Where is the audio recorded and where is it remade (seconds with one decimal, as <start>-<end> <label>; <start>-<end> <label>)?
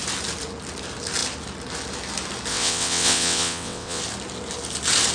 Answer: 0.0-2.5 recorded; 2.5-4.0 remade; 4.0-5.1 recorded